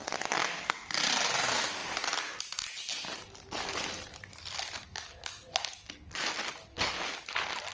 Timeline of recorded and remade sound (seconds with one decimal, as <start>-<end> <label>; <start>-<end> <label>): 0.0-4.8 recorded; 4.8-5.5 remade; 5.5-6.7 recorded; 6.7-7.2 remade; 7.2-7.7 recorded